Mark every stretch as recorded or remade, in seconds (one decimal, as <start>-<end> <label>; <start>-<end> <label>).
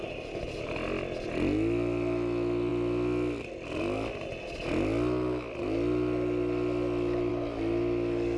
0.0-8.4 recorded